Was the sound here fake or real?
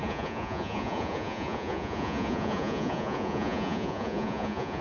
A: fake